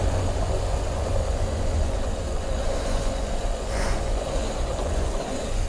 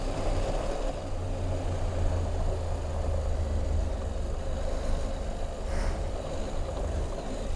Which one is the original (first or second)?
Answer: second